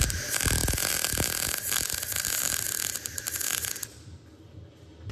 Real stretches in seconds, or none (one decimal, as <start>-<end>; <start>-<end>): none